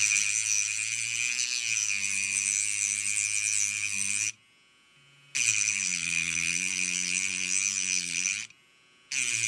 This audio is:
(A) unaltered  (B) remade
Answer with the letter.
A